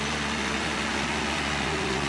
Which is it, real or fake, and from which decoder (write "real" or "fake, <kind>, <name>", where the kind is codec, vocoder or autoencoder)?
fake, vocoder, Vocos